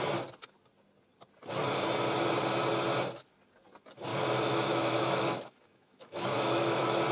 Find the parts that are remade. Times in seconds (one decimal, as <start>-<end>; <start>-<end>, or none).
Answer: 4.1-7.1

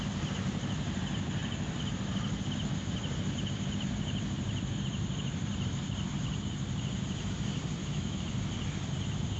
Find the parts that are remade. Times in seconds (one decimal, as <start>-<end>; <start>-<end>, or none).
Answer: 7.8-8.3

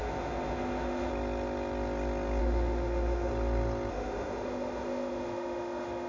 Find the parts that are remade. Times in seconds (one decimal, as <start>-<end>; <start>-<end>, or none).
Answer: 0.0-1.1; 2.4-3.3; 3.9-6.1

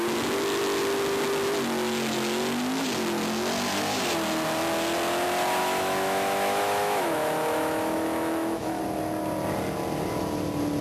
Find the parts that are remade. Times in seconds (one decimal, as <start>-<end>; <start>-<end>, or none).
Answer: 5.6-8.8

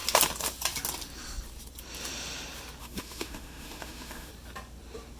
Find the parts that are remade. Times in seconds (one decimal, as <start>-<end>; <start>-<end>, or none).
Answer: 2.8-4.3

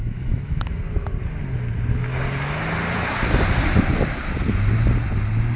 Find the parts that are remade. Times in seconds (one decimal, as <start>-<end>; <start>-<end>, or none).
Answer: 0.0-0.8

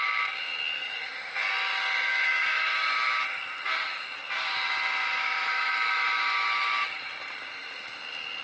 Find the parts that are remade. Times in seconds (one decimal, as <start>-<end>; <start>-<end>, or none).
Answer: 0.8-1.4; 2.1-3.4; 5.0-7.1

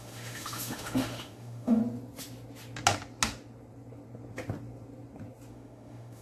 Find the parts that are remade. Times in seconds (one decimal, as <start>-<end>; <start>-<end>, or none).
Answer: 0.0-1.8; 5.5-6.2